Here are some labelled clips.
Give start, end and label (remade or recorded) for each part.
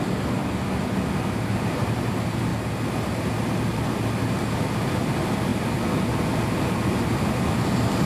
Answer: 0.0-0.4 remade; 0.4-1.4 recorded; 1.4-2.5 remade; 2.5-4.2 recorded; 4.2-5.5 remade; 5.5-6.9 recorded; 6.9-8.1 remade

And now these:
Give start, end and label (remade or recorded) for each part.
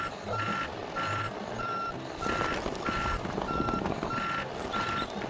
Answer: 0.0-0.8 recorded; 0.8-4.0 remade; 4.0-5.3 recorded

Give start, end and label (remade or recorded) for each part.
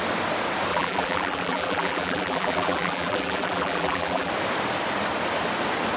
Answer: 0.0-0.7 recorded; 0.7-4.3 remade; 4.3-6.0 recorded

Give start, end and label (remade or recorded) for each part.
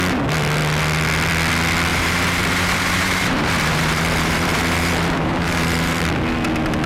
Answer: 0.0-1.9 recorded; 1.9-6.0 remade; 6.0-6.9 recorded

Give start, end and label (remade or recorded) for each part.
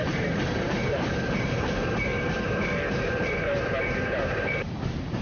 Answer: 0.0-2.1 remade; 2.1-2.9 recorded; 2.9-5.2 remade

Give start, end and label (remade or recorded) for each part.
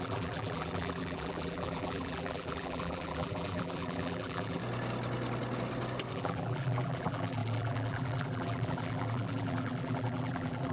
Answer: 0.0-4.6 remade; 4.6-6.1 recorded; 6.1-10.7 remade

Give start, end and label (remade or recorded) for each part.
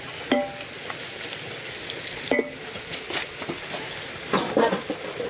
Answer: 0.0-5.3 recorded